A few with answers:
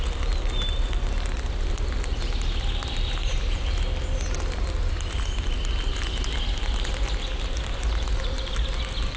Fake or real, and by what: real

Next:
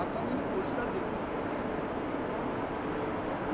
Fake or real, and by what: real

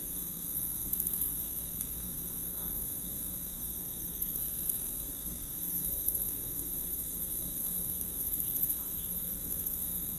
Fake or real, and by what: fake, codec, SNAC